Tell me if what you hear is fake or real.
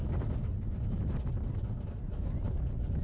real